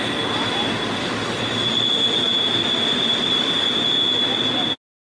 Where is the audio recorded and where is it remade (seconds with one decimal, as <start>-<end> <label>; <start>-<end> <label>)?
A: 0.0-0.4 recorded; 0.4-3.5 remade; 3.5-5.2 recorded